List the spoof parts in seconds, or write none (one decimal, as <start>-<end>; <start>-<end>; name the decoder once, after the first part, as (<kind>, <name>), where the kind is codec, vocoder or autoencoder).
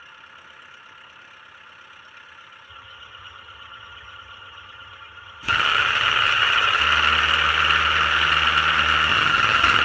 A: 2.7-6.8 (vocoder, HiFi-GAN); 9.1-9.8